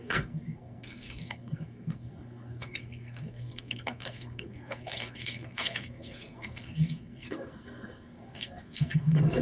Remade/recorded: remade